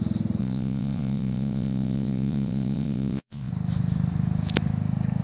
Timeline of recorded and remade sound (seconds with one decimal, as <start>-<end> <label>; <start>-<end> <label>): 0.0-0.4 recorded; 0.4-3.5 remade; 3.5-5.2 recorded